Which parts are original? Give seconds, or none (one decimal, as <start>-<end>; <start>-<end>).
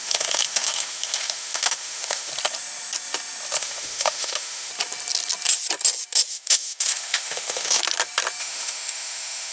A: 2.3-3.6; 4.7-6.3; 7.8-8.4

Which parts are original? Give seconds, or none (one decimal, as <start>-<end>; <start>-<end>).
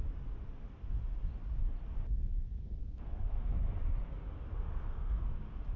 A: 0.0-2.8; 3.5-4.7; 5.2-5.8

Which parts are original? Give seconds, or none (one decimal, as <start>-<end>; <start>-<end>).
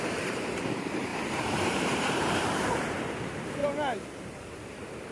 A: 3.6-4.2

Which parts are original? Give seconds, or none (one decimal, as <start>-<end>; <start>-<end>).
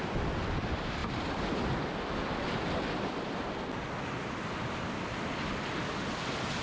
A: 0.0-6.6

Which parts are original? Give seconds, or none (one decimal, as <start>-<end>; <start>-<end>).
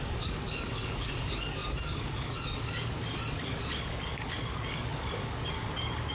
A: none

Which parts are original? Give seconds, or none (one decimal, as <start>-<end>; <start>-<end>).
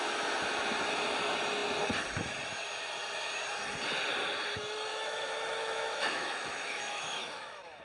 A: 0.0-4.9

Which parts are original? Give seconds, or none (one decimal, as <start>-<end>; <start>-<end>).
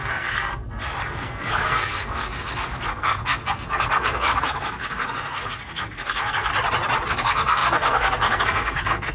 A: 6.5-7.1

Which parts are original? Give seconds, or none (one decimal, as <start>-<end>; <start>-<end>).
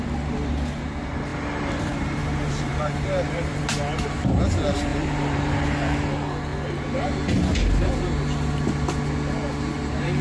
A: 0.0-1.3; 3.6-4.9; 5.5-10.2